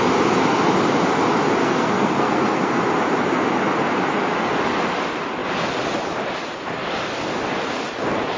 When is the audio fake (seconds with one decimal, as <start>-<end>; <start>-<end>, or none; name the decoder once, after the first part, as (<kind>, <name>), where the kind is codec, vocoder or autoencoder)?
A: 1.6-2.8 (codec, SNAC)